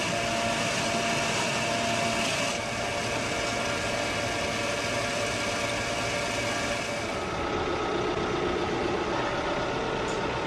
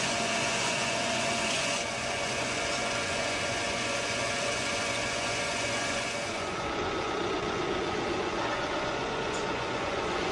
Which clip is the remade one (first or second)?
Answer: second